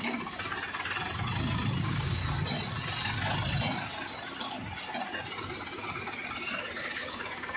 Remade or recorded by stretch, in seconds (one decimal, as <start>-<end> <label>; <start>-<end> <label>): 0.0-0.5 remade; 0.5-1.8 recorded; 1.8-2.2 remade; 2.2-6.8 recorded; 6.8-7.6 remade